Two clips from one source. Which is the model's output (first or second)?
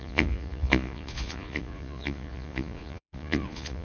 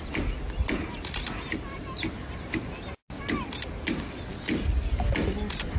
first